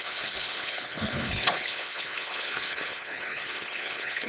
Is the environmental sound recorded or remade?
remade